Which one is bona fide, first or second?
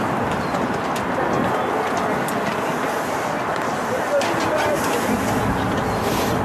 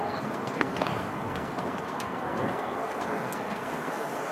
first